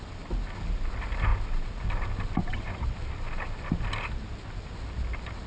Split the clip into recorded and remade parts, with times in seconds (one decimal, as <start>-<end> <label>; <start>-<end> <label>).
0.0-5.5 recorded